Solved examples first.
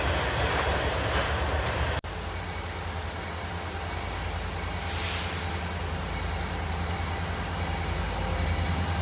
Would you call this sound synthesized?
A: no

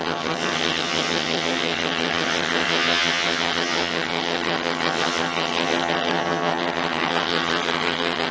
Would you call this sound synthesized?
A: yes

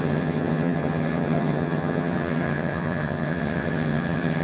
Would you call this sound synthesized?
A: yes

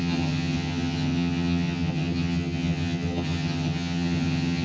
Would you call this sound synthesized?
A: yes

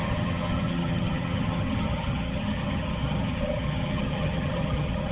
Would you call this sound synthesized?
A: yes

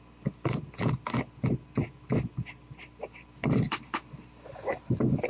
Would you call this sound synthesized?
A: no